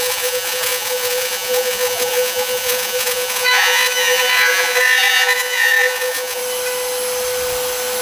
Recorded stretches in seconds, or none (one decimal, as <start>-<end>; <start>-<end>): 6.4-8.0